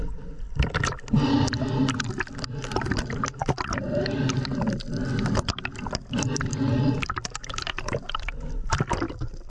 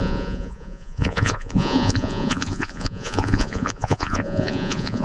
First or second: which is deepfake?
second